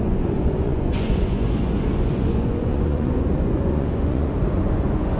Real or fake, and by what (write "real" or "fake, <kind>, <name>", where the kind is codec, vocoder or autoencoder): fake, vocoder, Vocos